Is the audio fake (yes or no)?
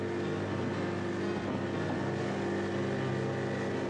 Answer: no